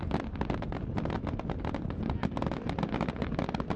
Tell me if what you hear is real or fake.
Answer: real